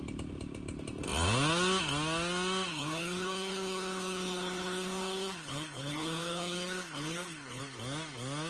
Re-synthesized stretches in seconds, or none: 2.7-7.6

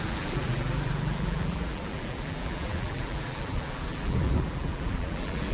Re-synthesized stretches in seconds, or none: 0.0-5.5

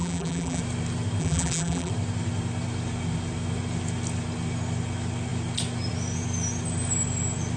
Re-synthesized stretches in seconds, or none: 0.0-0.6; 1.2-1.9

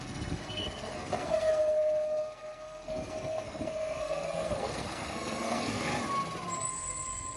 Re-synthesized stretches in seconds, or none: 0.0-5.9; 6.7-7.4

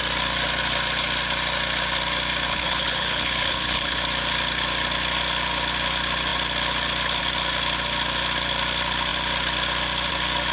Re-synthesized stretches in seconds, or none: 2.5-4.0

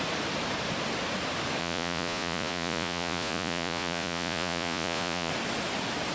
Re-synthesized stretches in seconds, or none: 1.6-5.3

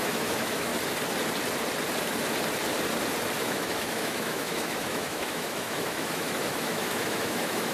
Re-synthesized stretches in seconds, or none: 0.0-0.7; 3.4-7.7

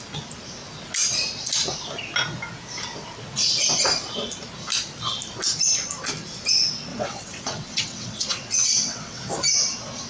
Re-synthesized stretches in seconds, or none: 6.9-9.3